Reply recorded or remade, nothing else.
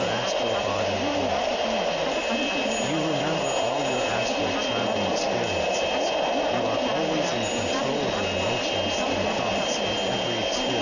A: recorded